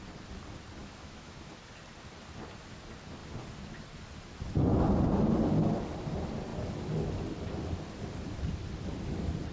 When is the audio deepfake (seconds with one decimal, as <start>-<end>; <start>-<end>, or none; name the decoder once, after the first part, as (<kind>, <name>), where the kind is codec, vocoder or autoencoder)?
0.8-1.5 (autoencoder, DAC-VAE)